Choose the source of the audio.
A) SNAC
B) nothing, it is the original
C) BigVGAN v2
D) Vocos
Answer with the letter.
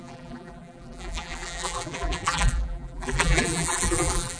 C